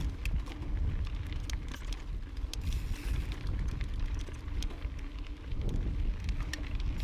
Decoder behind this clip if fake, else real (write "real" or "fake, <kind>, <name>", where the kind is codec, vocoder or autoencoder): real